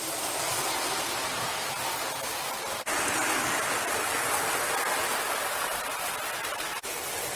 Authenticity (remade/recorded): recorded